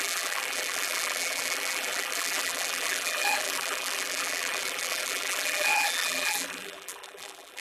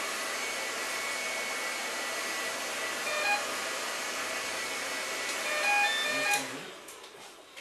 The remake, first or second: first